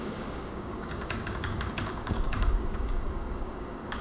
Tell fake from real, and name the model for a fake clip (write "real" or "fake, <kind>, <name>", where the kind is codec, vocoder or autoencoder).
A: fake, codec, DAC